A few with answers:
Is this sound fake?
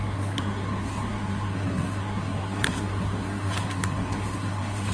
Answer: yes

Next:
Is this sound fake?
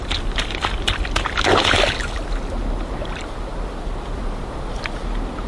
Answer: no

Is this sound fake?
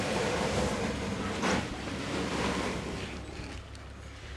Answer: no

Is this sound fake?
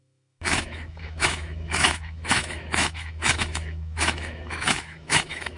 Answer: yes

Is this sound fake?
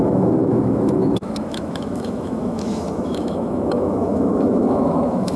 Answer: yes